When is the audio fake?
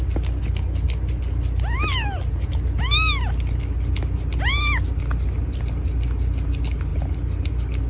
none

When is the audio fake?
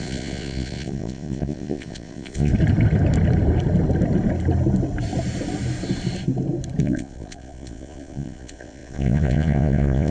0.0-2.5 (vocoder, Vocos); 6.8-10.1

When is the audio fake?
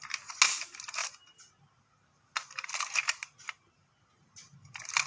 none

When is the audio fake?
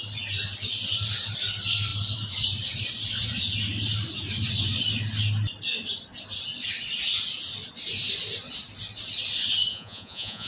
9.7-10.5 (vocoder, Vocos)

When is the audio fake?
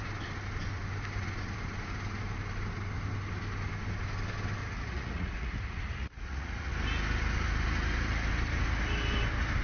4.6-6.7 (vocoder, Vocos)